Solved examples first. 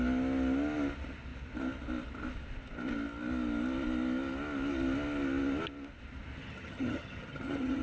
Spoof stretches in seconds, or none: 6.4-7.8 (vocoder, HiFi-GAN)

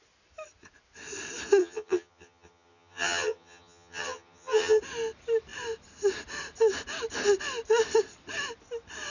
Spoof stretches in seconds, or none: 1.6-4.8 (vocoder, HiFi-GAN)

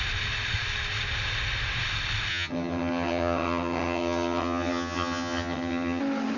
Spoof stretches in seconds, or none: 2.3-6.0 (vocoder, HiFi-GAN)

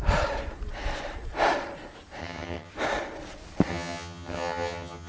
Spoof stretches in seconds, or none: 2.2-2.7 (vocoder, HiFi-GAN); 3.7-5.1

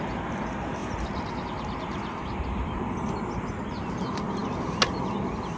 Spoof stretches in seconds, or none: none

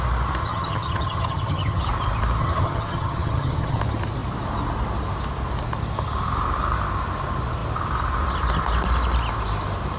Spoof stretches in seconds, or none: 0.4-1.8 (vocoder, HiFi-GAN); 2.4-3.8

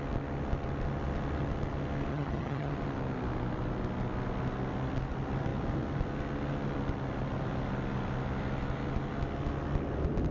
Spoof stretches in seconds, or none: 2.1-2.7 (vocoder, HiFi-GAN)

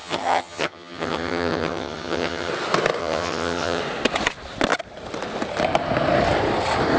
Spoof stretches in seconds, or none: 0.0-2.5 (vocoder, HiFi-GAN); 3.0-3.8